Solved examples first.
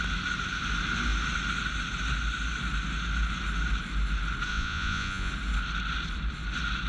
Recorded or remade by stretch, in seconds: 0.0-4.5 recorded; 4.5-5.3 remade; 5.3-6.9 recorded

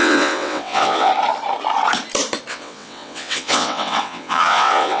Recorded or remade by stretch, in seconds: 0.0-1.1 remade; 1.1-2.5 recorded; 2.5-5.0 remade

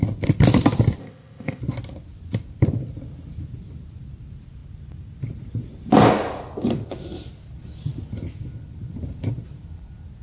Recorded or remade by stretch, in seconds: 0.0-1.0 recorded; 1.0-1.6 remade; 1.6-10.2 recorded

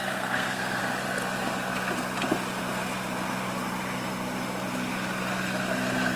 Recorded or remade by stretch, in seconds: 0.0-0.8 remade; 0.8-6.2 recorded

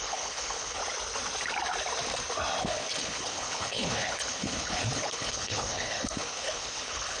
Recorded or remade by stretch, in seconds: 0.0-0.8 remade; 0.8-2.6 recorded; 2.6-7.2 remade

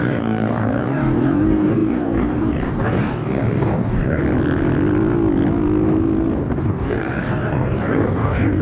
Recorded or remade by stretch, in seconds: 0.0-4.2 remade; 4.2-6.6 recorded; 6.6-8.6 remade